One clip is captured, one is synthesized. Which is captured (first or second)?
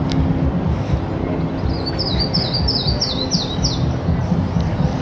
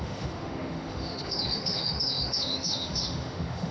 first